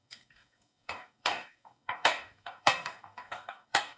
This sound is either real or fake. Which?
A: fake